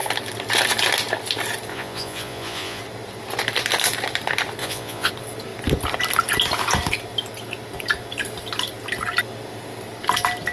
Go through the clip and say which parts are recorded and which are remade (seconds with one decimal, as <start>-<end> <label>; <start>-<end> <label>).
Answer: 0.0-1.7 recorded; 1.7-2.8 remade; 2.8-4.6 recorded; 4.6-5.1 remade; 5.1-10.5 recorded